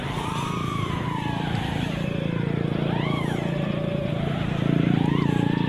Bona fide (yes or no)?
no